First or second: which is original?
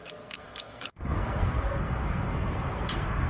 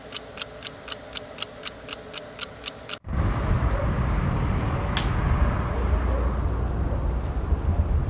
second